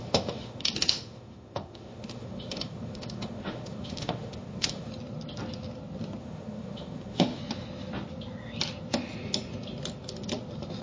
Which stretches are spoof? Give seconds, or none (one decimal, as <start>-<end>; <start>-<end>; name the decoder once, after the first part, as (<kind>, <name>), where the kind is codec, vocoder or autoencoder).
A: 0.0-4.9 (autoencoder, DAC-VAE); 6.2-7.4